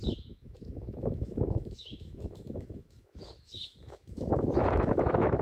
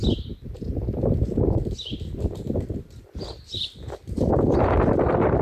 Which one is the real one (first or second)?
second